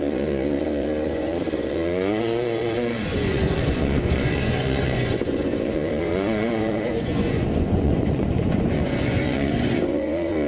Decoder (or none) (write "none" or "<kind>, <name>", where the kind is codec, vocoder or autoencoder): vocoder, Vocos